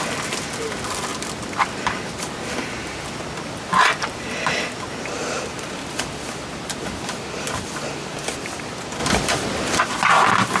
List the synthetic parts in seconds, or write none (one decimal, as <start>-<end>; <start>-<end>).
none